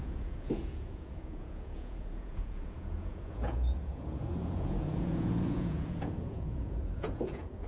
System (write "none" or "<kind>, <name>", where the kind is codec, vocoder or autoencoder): vocoder, Vocos